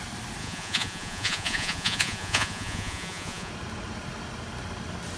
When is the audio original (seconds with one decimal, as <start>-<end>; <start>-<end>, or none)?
0.0-0.4; 3.5-5.2